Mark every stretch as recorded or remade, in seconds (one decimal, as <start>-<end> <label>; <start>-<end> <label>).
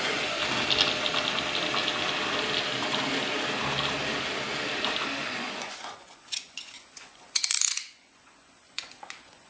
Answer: 0.0-0.4 remade; 0.4-5.2 recorded; 5.2-9.5 remade